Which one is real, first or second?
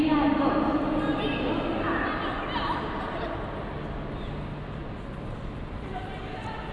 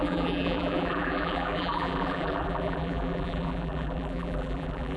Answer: first